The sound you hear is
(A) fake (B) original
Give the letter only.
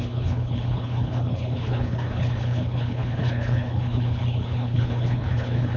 A